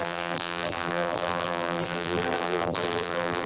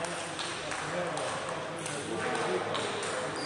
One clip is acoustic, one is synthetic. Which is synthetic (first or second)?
first